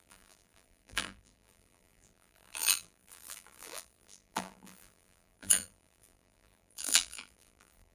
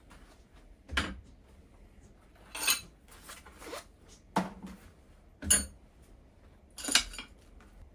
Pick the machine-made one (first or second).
first